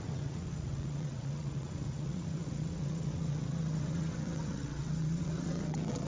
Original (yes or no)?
no